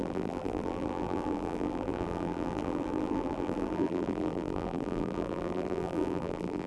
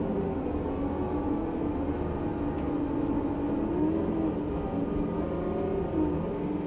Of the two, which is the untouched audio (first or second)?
second